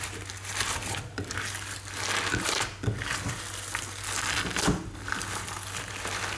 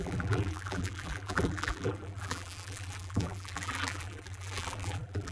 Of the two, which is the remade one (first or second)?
second